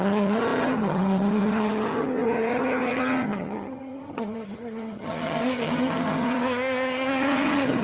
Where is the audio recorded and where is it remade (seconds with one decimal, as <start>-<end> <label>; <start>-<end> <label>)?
0.0-7.8 remade